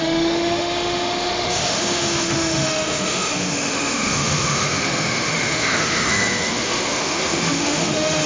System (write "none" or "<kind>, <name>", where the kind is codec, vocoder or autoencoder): autoencoder, DAC-VAE